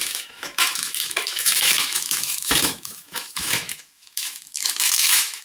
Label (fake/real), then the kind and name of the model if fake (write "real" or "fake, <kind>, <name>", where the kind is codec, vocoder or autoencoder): fake, autoencoder, DAC-VAE